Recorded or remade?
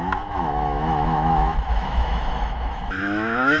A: remade